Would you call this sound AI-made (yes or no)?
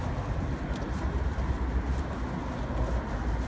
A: no